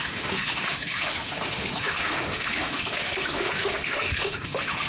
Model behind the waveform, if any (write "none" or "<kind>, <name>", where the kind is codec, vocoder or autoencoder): autoencoder, DAC-VAE